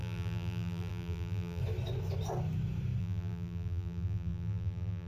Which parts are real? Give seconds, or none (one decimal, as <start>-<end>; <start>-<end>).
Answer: 1.6-3.0